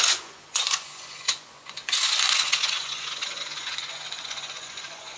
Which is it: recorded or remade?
remade